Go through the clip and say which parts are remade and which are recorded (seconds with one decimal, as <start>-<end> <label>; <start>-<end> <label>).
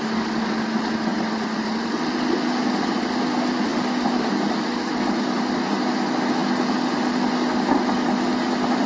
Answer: 0.0-1.1 recorded; 1.1-1.9 remade; 1.9-3.7 recorded; 3.7-4.3 remade; 4.3-8.9 recorded